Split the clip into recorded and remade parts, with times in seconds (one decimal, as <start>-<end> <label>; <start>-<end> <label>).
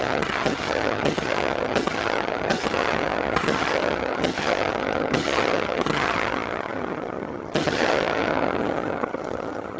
0.0-9.8 remade